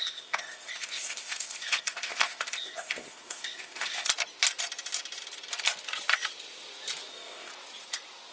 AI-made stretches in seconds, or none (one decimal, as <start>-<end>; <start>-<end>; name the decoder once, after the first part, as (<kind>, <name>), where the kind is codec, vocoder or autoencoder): 0.0-4.1 (codec, ZipCodec); 7.1-7.5